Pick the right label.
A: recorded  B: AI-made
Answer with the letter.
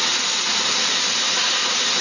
A